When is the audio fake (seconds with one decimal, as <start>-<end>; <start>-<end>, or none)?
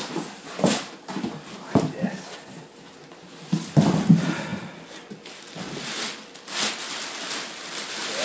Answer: none